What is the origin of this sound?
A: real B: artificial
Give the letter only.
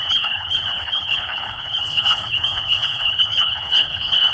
B